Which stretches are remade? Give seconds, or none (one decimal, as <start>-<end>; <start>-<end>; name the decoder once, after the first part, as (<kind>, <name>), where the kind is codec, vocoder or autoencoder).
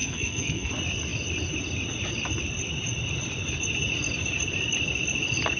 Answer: 0.0-0.7 (codec, SNAC)